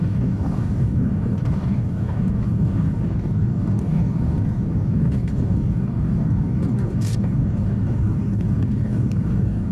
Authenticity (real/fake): fake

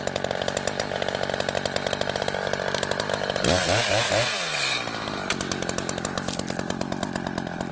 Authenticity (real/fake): real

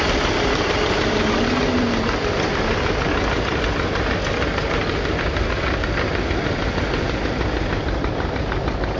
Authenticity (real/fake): real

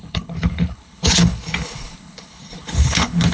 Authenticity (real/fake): fake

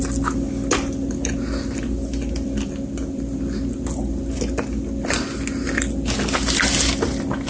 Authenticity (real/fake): real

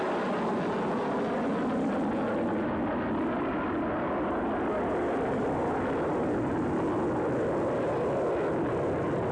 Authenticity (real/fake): real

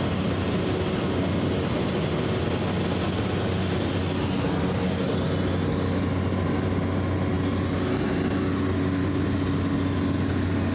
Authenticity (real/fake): real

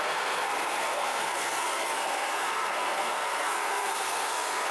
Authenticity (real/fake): fake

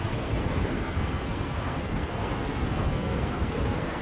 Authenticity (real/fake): fake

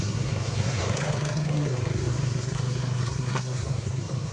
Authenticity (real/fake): fake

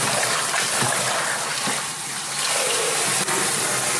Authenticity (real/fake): fake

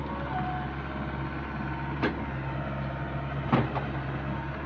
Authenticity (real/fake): real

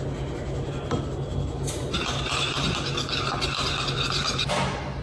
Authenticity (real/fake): real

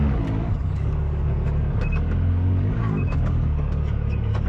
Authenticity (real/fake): fake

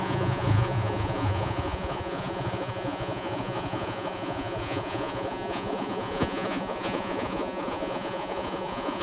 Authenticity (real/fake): fake